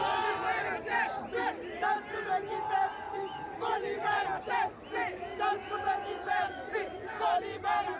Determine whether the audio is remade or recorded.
recorded